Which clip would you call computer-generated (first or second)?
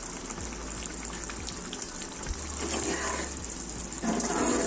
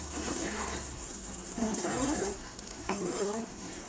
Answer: second